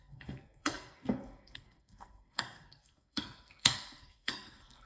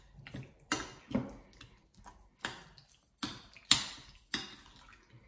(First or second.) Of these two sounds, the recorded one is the second